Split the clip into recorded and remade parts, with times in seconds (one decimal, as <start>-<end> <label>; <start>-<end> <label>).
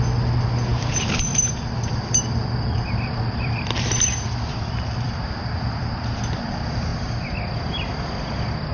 0.0-0.7 recorded; 0.7-5.4 remade; 5.4-8.7 recorded